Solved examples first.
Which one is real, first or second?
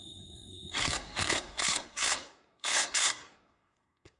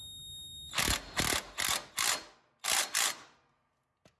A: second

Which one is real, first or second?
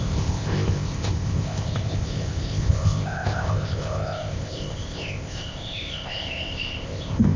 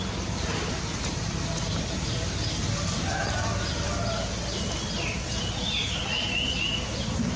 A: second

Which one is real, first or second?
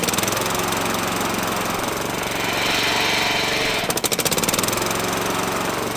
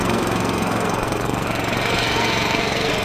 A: first